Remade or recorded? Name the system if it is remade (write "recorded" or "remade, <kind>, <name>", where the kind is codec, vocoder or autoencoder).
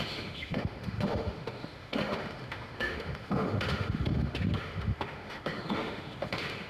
remade, autoencoder, DAC-VAE